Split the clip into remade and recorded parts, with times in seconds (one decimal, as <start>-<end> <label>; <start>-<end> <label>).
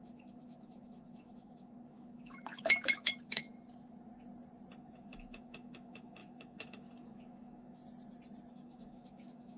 0.0-3.5 remade; 3.5-4.8 recorded; 4.8-7.8 remade; 7.8-8.5 recorded; 8.5-9.6 remade